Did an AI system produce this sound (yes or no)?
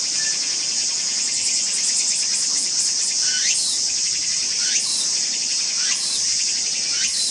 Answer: no